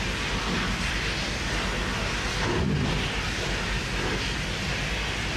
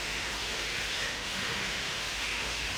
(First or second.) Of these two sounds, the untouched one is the first